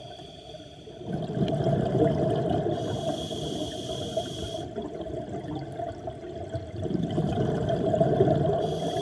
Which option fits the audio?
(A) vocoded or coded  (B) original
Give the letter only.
B